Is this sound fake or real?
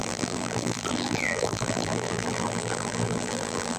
fake